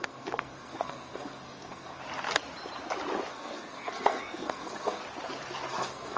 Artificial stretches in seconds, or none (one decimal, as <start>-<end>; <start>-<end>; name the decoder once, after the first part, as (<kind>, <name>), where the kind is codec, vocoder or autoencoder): 0.0-2.0 (codec, SNAC); 3.3-5.0; 5.7-6.2